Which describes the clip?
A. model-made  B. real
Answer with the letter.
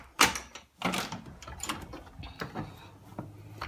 B